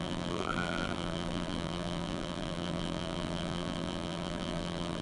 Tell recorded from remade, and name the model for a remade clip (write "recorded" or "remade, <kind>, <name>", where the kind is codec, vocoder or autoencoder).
remade, vocoder, BigVGAN v2